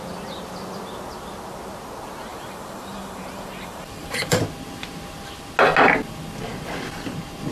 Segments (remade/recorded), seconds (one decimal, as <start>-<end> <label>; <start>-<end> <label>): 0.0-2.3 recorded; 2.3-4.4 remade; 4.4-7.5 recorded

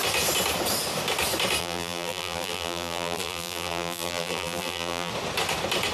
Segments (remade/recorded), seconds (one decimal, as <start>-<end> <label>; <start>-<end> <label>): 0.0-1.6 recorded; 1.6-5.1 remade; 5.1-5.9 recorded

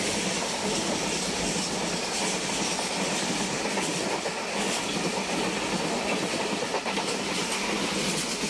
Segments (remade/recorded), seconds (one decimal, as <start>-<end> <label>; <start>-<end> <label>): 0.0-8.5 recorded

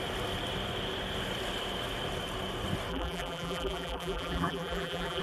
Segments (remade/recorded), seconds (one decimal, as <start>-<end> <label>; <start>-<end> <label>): 0.0-2.9 recorded; 2.9-5.2 remade

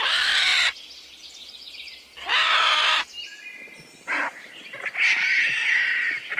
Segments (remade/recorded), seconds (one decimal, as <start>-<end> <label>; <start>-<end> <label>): 0.0-6.4 remade